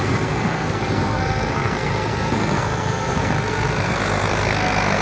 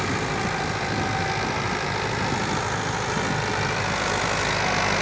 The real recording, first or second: second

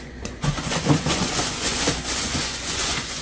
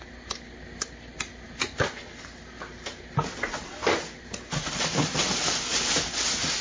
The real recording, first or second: second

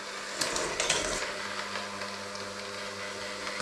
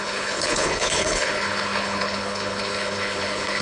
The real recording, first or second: first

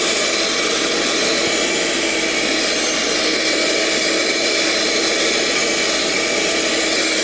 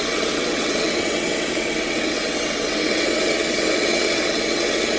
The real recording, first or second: first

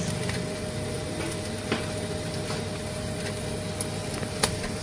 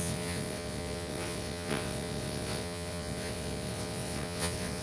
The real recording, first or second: first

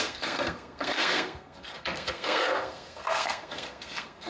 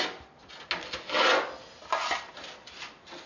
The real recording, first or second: second